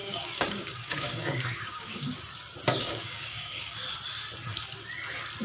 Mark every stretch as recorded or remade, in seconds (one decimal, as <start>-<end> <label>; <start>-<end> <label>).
0.0-2.2 remade; 2.2-2.7 recorded; 2.7-3.8 remade; 3.8-5.4 recorded